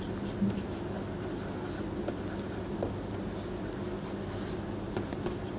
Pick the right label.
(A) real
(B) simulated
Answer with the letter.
A